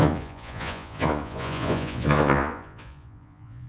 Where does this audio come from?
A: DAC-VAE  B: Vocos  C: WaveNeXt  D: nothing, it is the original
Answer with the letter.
B